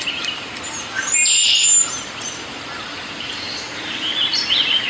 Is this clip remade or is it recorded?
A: recorded